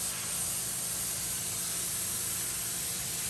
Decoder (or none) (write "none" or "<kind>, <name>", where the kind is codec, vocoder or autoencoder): none